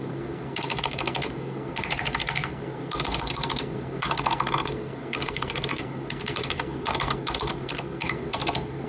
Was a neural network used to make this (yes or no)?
yes